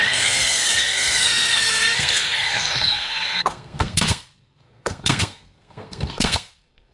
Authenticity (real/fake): fake